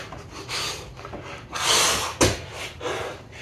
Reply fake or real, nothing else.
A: real